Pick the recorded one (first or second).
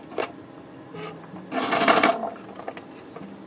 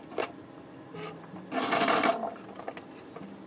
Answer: first